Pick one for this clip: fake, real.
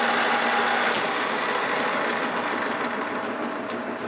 real